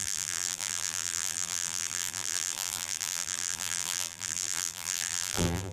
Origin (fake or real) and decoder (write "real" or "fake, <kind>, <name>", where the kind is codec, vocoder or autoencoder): fake, vocoder, BigVGAN v2